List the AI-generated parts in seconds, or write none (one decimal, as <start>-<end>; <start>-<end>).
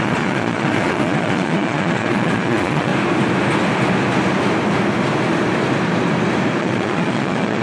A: 0.0-2.9; 6.6-7.6